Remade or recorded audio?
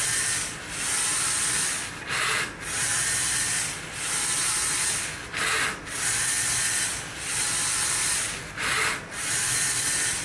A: recorded